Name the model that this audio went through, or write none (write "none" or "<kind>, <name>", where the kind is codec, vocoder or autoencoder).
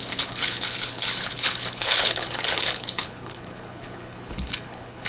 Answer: codec, HILCodec